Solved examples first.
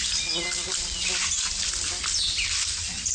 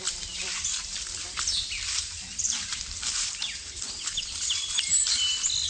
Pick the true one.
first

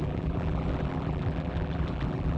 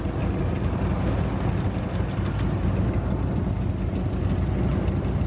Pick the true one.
second